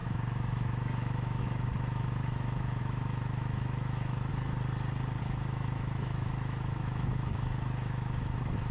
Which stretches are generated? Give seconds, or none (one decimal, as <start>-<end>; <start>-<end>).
0.0-4.3; 5.2-8.7